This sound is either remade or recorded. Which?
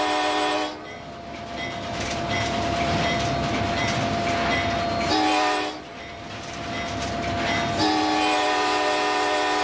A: recorded